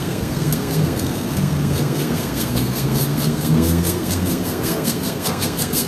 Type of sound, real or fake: fake